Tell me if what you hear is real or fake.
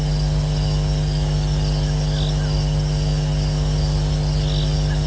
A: real